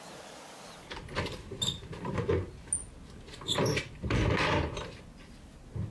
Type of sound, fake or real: real